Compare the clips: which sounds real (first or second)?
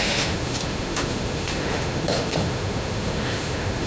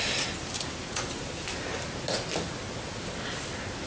second